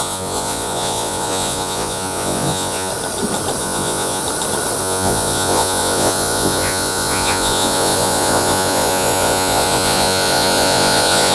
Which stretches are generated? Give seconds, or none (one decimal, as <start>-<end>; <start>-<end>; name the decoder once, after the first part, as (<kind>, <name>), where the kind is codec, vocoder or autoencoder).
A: 0.0-2.9 (vocoder, Vocos); 3.6-4.2; 4.8-11.3